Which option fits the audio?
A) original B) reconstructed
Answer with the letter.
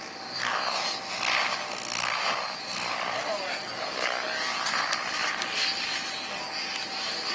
A